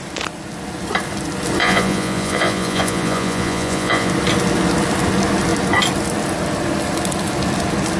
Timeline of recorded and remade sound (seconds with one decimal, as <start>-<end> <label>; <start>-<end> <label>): 0.0-1.6 recorded; 1.6-4.1 remade; 4.1-8.0 recorded